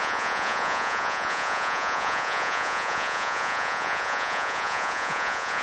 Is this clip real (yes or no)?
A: no